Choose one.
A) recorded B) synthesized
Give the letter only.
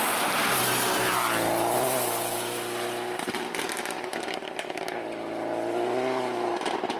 A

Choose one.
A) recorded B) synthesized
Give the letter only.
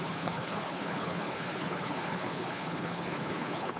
B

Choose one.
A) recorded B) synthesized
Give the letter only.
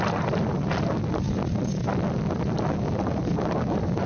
A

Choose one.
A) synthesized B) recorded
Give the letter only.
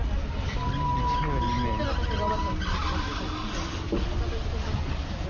B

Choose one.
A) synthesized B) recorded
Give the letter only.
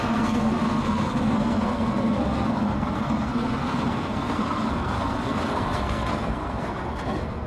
A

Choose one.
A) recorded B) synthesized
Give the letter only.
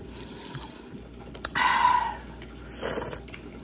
A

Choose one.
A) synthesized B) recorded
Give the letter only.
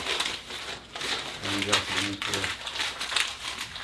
A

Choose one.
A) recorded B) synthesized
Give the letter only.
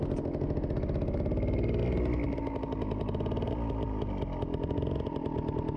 A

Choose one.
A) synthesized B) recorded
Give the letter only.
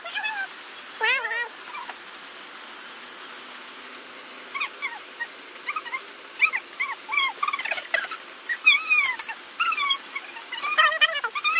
B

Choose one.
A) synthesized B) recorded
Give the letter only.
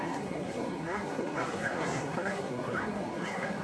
A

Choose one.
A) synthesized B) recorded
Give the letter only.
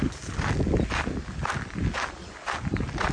B